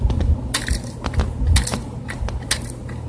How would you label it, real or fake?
real